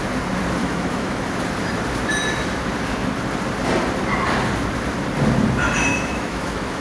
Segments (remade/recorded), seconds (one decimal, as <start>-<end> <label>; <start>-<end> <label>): 0.0-0.6 recorded; 0.6-1.2 remade; 1.2-5.9 recorded; 5.9-6.8 remade